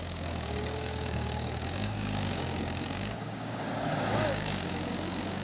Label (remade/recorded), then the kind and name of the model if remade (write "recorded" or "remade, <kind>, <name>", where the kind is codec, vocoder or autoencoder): remade, codec, DAC